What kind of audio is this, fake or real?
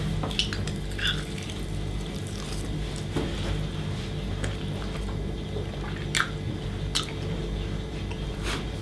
real